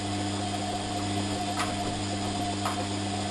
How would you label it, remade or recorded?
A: recorded